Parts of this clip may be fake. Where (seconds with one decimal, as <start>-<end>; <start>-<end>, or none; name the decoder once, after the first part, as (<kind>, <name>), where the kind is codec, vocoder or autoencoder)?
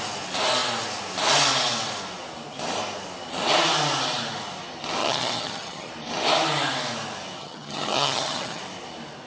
5.0-5.9 (vocoder, HiFi-GAN); 7.4-8.6